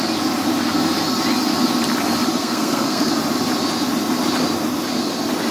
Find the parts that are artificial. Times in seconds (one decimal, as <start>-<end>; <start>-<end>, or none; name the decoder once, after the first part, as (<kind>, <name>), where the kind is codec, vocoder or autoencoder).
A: 2.4-3.1 (codec, SNAC)